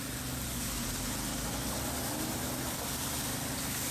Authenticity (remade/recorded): recorded